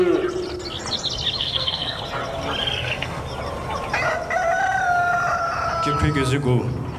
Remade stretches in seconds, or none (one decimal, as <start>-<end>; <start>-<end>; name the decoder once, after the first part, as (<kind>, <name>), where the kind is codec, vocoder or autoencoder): 1.4-2.0 (codec, SNAC); 2.6-3.2